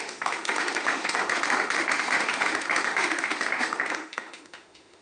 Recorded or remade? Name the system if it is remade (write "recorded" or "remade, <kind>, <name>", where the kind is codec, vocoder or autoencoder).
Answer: remade, autoencoder, DAC-VAE